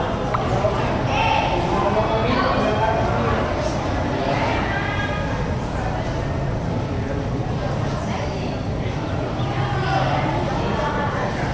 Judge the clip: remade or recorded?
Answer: recorded